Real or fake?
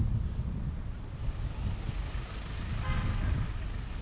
real